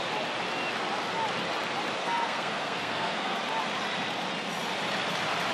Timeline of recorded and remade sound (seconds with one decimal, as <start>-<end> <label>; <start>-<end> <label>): 0.0-2.0 recorded; 2.0-3.4 remade; 3.4-5.5 recorded